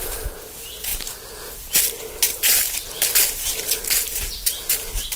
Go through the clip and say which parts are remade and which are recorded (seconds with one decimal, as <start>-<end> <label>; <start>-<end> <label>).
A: 0.0-5.2 recorded